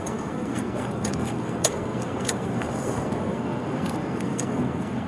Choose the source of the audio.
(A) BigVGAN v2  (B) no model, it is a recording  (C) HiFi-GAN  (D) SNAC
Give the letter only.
D